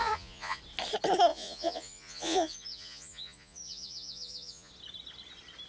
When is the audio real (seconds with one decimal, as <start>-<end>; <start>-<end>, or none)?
0.6-1.3; 4.7-5.7